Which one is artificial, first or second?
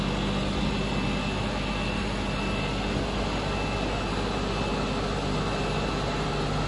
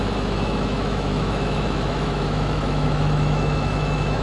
second